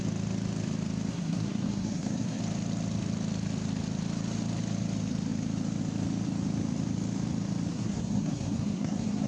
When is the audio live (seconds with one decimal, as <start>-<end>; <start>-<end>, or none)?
0.0-1.1; 2.4-7.7